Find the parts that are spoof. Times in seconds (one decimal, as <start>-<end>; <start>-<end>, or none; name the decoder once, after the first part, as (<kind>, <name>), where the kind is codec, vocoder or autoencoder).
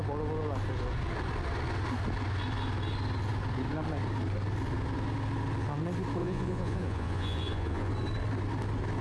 6.2-7.9 (vocoder, Vocos)